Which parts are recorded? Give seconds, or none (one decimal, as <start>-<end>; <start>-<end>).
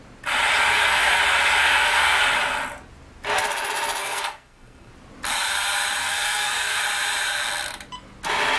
0.0-0.7; 1.2-1.6; 2.2-4.0; 4.9-6.0; 6.8-8.6